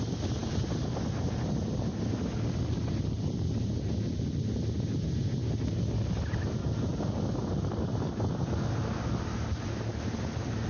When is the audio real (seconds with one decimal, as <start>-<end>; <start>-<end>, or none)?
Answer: 0.0-10.7